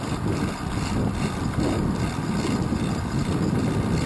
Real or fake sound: real